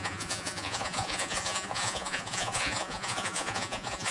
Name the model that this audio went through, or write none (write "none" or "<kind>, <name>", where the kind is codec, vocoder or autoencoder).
vocoder, Vocos